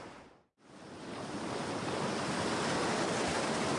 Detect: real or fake real